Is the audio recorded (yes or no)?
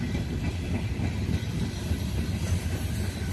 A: yes